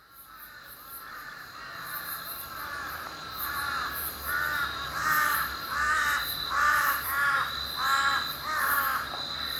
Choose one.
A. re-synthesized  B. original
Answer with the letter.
A